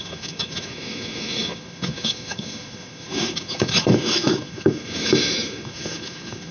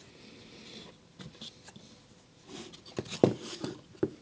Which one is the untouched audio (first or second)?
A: second